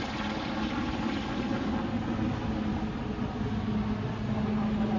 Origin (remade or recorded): recorded